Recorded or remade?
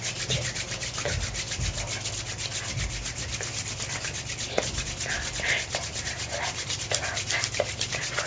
recorded